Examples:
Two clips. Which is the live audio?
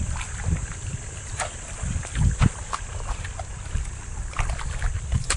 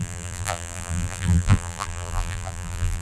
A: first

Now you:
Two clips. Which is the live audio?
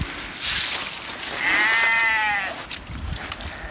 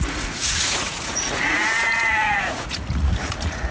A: first